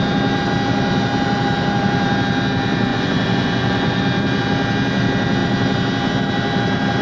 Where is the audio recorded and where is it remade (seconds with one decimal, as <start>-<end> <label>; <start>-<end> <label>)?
0.0-2.9 recorded; 2.9-4.0 remade; 4.0-7.0 recorded